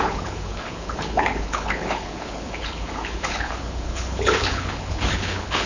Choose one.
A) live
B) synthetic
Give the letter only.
B